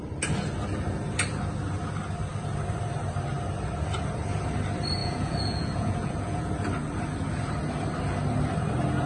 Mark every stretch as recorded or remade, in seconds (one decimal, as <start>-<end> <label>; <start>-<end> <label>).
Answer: 0.0-5.0 recorded; 5.0-6.5 remade; 6.5-9.1 recorded